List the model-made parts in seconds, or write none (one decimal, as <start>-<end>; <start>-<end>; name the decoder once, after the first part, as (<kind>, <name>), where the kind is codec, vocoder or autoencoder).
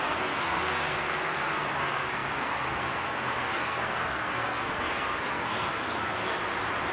0.0-6.4 (codec, SNAC)